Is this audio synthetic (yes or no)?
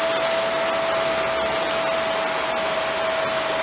no